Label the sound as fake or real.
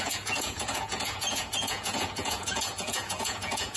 fake